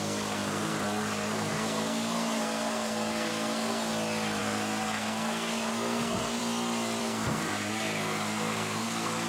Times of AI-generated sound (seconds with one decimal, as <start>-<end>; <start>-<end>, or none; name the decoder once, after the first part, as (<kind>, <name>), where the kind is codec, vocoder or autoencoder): 0.0-3.9 (codec, SNAC); 4.4-6.4; 7.0-9.3